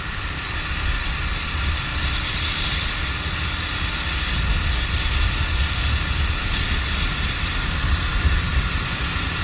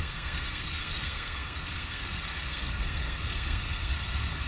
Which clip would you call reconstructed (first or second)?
second